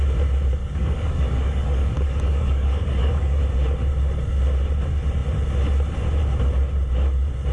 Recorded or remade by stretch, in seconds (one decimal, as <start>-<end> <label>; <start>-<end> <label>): 0.0-0.6 recorded; 0.6-3.4 remade; 3.4-7.5 recorded